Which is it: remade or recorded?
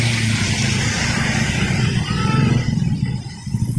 recorded